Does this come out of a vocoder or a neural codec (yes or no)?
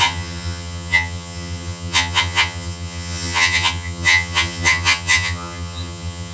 yes